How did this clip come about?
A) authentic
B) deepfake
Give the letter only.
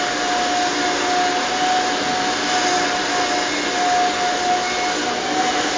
A